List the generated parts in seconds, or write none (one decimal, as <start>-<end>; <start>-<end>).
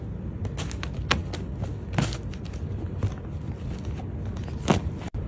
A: none